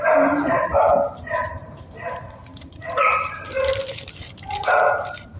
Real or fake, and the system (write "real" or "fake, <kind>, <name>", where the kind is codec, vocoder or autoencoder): fake, vocoder, BigVGAN v2